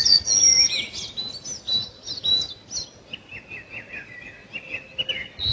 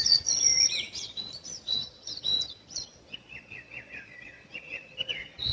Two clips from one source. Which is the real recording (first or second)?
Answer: first